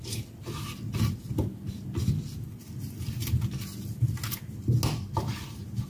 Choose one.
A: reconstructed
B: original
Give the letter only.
B